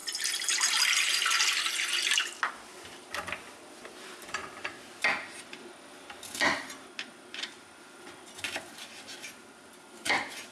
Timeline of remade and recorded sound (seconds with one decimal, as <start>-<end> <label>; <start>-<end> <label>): 0.0-10.5 recorded